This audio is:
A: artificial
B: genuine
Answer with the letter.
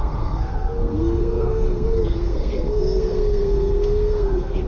A